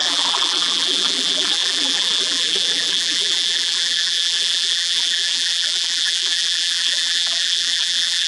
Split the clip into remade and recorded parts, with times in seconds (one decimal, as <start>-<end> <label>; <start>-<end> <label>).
0.0-8.3 remade